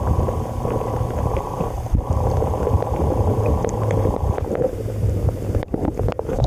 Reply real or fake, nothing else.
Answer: fake